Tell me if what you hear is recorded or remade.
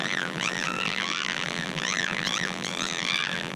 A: remade